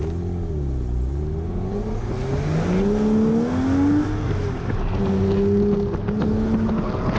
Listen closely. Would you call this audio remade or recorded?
recorded